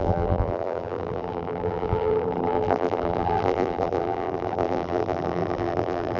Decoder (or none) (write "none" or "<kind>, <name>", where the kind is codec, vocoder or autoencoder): vocoder, BigVGAN v2